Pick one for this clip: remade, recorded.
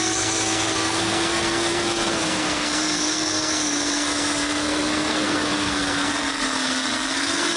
remade